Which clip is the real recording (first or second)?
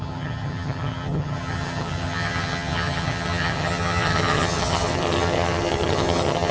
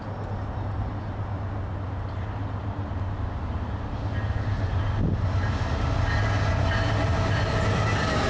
second